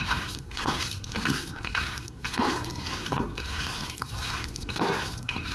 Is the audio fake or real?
fake